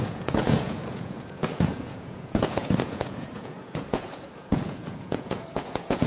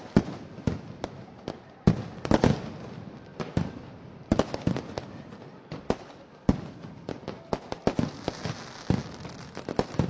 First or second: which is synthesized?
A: first